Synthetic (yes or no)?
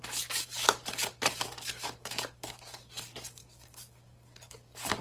yes